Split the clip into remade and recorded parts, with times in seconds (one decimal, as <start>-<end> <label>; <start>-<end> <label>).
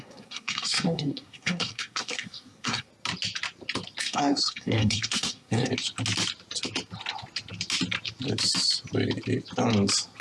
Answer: 0.0-2.9 remade; 2.9-4.0 recorded; 4.0-5.7 remade; 5.7-10.2 recorded